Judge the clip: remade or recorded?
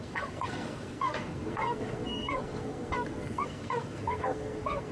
remade